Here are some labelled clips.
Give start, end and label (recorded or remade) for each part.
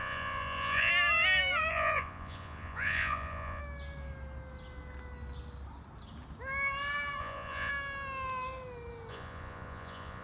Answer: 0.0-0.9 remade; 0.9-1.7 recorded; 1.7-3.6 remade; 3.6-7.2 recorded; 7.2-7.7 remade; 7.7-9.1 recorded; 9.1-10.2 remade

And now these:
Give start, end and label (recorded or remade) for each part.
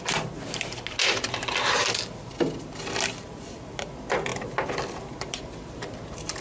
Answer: 0.0-6.4 recorded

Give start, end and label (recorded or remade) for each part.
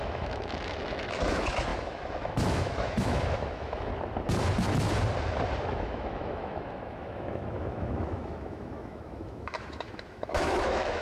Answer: 0.0-3.9 remade; 3.9-5.6 recorded; 5.6-11.0 remade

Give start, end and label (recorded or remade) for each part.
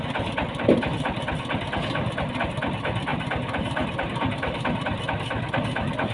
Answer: 0.0-3.1 recorded; 3.1-4.7 remade; 4.7-6.1 recorded